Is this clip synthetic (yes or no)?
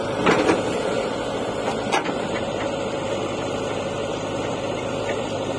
no